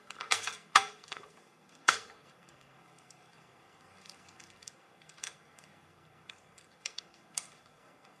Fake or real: fake